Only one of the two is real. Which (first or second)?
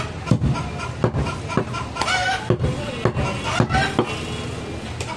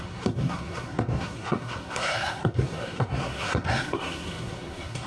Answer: first